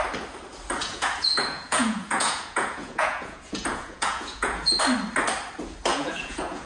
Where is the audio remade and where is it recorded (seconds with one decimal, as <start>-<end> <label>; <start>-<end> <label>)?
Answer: 0.0-0.8 recorded; 0.8-4.8 remade; 4.8-5.9 recorded; 5.9-6.7 remade